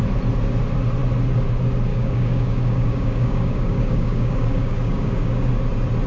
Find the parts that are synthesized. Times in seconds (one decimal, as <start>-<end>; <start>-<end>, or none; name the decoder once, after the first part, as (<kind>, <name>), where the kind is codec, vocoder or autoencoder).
1.9-5.5 (codec, DAC)